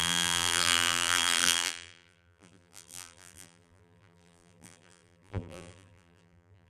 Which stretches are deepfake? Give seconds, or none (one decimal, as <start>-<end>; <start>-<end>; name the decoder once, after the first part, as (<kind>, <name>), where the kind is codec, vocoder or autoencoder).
0.0-6.7 (vocoder, BigVGAN v2)